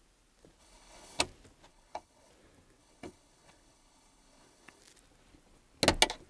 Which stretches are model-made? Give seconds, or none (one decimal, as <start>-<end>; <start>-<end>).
0.6-1.2; 1.7-2.3; 2.8-4.8